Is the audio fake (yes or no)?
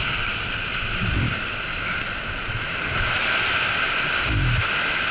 no